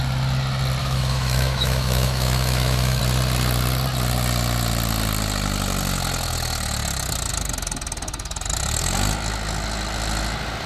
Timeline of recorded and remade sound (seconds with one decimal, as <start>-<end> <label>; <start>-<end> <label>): 0.0-0.8 recorded; 0.8-3.0 remade; 3.0-10.7 recorded